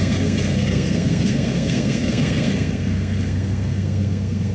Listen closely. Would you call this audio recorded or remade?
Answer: remade